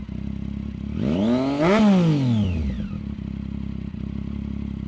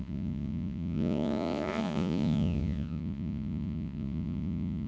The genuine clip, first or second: first